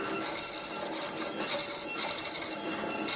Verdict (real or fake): real